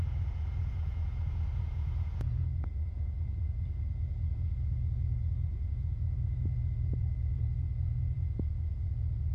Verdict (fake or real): fake